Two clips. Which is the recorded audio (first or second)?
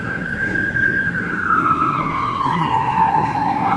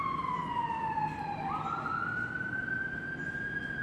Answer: second